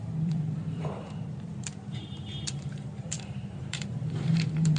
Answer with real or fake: fake